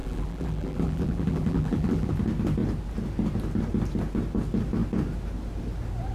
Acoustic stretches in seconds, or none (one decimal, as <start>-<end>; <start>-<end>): 2.1-6.1